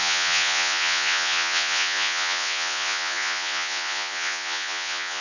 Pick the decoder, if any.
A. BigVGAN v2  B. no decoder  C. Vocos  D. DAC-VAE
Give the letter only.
C